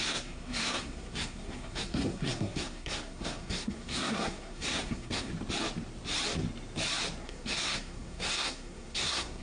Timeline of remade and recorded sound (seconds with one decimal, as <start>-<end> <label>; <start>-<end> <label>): 0.0-5.3 remade; 5.3-7.2 recorded; 7.2-9.4 remade